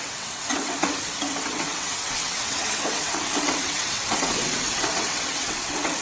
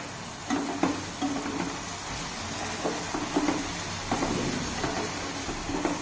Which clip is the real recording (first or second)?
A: second